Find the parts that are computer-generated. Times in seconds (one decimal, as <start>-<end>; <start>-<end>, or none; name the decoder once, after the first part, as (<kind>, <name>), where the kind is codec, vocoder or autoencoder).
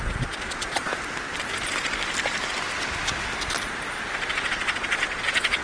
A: 0.0-0.9 (vocoder, Vocos); 4.3-5.6